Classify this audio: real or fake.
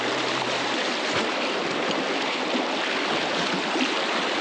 fake